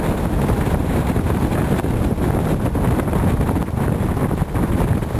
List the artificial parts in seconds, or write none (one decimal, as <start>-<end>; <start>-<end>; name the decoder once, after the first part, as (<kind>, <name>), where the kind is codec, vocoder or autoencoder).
0.8-2.1 (vocoder, BigVGAN v2)